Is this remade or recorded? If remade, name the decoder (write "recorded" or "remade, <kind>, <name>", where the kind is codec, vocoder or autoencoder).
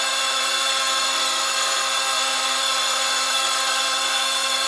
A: remade, codec, SNAC